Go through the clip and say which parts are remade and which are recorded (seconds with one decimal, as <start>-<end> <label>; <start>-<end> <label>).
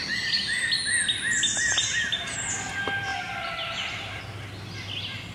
0.0-1.9 recorded; 1.9-2.7 remade; 2.7-3.1 recorded; 3.1-4.2 remade; 4.2-5.3 recorded